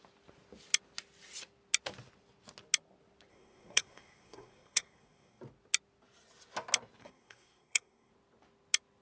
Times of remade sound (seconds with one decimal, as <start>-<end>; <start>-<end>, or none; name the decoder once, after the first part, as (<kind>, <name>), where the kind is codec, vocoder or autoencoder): 3.3-5.4 (codec, SNAC); 7.0-8.1